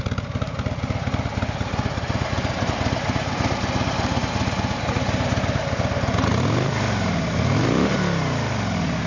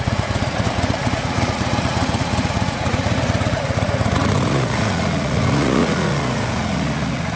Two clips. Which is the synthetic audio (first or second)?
second